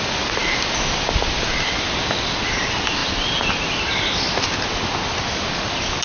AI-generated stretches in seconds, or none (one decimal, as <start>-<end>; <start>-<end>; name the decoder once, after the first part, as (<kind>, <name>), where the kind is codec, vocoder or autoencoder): none